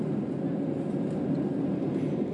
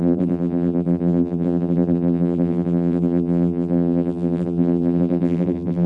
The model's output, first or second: second